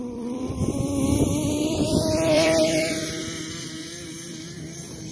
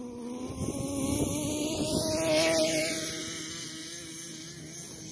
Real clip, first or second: second